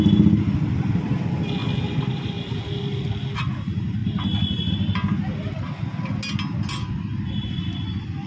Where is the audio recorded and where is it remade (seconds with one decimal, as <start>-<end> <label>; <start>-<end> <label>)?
0.0-8.3 recorded